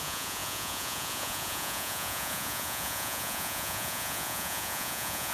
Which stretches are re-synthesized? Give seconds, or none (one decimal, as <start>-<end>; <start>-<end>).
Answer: 0.0-5.3

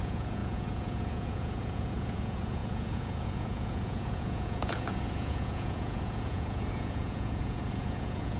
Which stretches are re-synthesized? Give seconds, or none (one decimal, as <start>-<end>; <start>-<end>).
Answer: 0.0-8.4

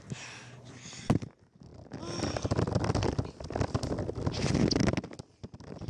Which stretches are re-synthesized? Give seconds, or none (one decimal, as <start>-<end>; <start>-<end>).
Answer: none

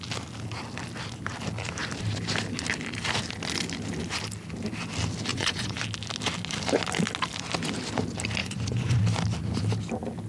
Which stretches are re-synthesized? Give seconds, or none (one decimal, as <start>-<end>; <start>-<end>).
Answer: 5.3-5.8; 8.4-9.0